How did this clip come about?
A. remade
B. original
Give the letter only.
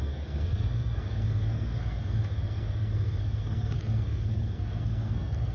A